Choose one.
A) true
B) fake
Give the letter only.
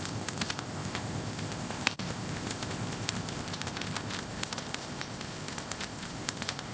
B